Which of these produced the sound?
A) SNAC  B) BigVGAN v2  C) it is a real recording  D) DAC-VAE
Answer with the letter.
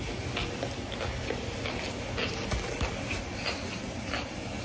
C